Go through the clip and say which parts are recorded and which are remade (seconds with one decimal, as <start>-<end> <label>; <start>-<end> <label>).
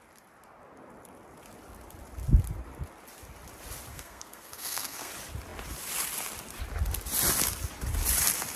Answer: 0.0-3.9 recorded; 3.9-5.1 remade; 5.1-8.6 recorded